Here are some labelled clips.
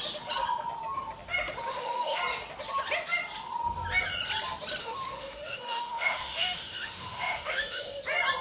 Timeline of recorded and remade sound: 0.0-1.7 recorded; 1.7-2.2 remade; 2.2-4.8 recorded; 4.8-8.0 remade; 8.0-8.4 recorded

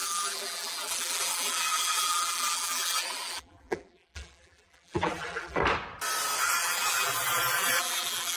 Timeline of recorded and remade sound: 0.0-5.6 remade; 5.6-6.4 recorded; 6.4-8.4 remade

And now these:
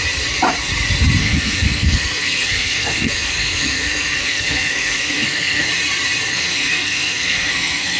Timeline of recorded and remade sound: 0.0-1.2 recorded; 1.2-5.7 remade; 5.7-6.3 recorded; 6.3-8.0 remade